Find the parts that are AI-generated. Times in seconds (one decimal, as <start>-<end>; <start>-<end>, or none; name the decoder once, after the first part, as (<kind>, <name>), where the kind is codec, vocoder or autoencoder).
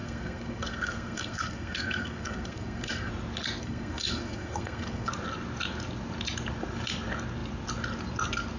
0.0-3.1 (codec, SNAC); 3.6-5.1